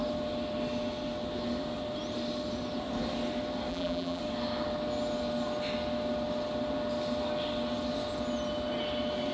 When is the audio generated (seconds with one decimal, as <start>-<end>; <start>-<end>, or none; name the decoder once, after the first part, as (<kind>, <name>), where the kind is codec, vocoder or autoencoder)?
3.7-4.2 (vocoder, BigVGAN v2)